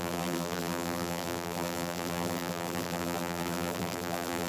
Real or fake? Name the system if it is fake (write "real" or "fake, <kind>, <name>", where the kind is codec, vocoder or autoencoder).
fake, vocoder, BigVGAN v2